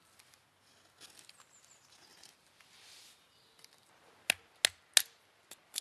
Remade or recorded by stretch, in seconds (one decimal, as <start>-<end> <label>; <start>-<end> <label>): 0.0-5.8 recorded